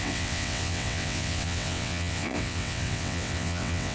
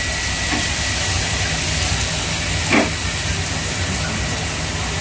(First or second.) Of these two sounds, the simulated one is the first